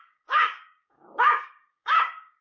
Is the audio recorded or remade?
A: remade